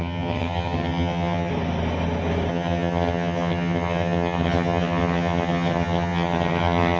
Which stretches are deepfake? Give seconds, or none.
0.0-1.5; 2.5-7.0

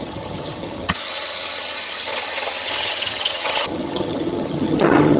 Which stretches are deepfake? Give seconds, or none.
0.0-5.2

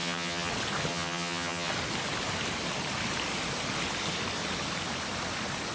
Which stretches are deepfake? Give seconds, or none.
0.0-0.5; 0.9-1.7

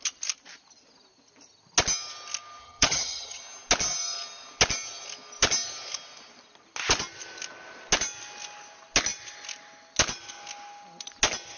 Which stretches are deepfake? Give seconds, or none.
2.6-3.4

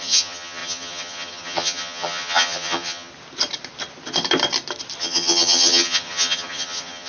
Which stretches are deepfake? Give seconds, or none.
0.0-3.1; 5.0-7.1

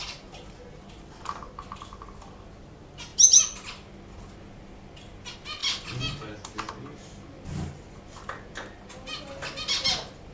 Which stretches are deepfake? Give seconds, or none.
none

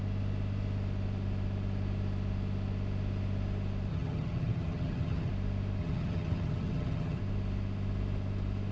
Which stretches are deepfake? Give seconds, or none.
3.9-5.3; 5.8-7.2

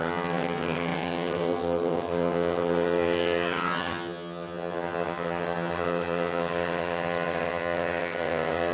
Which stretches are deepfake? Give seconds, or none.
0.0-8.7